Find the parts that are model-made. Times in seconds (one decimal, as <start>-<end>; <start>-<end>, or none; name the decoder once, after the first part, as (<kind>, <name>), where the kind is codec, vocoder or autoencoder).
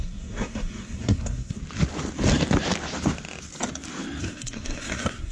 0.0-1.6 (codec, SNAC); 4.2-5.3